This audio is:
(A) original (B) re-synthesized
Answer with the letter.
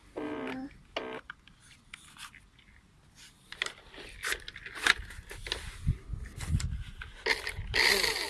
A